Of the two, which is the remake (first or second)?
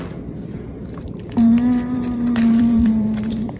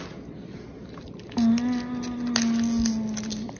first